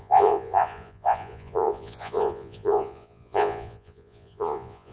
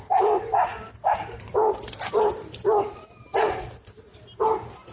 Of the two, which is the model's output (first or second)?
first